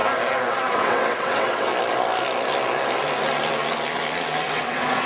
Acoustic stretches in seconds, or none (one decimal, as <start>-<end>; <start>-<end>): 0.0-0.5; 1.7-4.5